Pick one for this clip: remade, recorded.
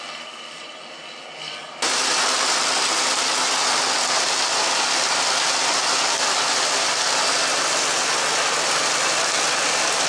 recorded